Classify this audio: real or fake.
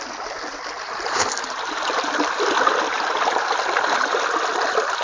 real